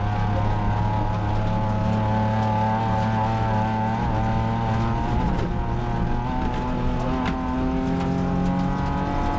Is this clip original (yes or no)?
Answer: yes